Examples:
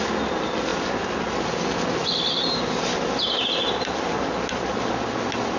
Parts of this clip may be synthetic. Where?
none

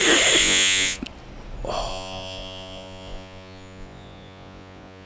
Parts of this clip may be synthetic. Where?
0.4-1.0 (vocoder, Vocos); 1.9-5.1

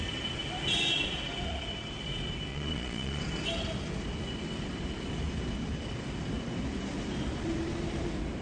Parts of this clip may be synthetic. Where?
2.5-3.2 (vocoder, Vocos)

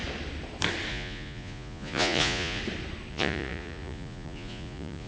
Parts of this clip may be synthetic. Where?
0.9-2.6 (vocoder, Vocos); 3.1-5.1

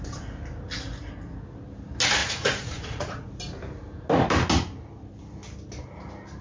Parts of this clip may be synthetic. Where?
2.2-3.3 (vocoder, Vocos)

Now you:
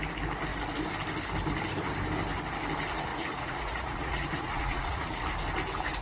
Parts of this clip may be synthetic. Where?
3.1-5.2 (vocoder, Vocos)